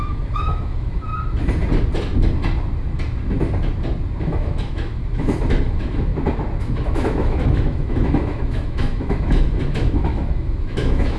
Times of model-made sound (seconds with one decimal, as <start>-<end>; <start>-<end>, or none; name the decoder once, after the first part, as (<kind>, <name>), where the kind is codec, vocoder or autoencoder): 0.0-1.1 (autoencoder, DAC-VAE); 4.2-6.1; 6.6-11.2